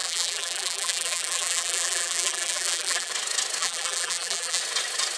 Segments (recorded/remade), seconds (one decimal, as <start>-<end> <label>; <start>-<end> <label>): 0.0-3.1 remade; 3.1-3.6 recorded; 3.6-4.6 remade; 4.6-5.2 recorded